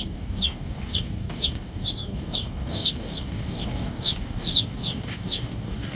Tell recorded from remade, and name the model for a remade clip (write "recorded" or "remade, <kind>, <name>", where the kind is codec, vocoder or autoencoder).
remade, codec, DAC